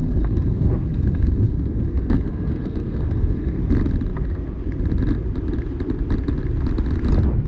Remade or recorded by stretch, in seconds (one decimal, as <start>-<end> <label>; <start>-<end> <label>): 0.0-3.6 remade; 3.6-7.5 recorded

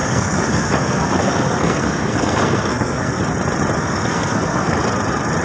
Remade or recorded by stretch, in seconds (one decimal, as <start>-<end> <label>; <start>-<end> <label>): 0.0-3.2 remade; 3.2-3.8 recorded; 3.8-4.8 remade; 4.8-5.4 recorded

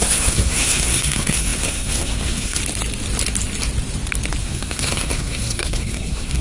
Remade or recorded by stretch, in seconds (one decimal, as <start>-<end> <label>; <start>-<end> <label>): 0.0-2.6 remade; 2.6-4.4 recorded; 4.4-6.4 remade

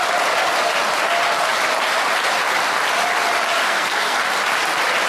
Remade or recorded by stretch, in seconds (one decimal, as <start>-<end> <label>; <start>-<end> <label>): 0.0-3.6 recorded; 3.6-4.3 remade; 4.3-5.1 recorded

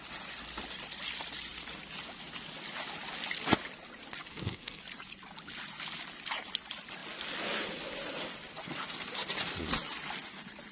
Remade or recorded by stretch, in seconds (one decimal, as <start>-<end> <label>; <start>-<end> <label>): 0.0-4.3 recorded; 4.3-4.8 remade; 4.8-10.7 recorded